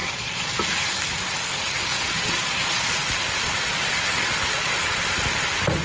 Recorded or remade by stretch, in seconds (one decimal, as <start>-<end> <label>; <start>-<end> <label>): 0.0-0.5 remade; 0.5-1.9 recorded; 1.9-2.9 remade; 2.9-3.5 recorded; 3.5-5.0 remade; 5.0-5.8 recorded